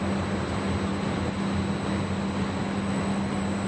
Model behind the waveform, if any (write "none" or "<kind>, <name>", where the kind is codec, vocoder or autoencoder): none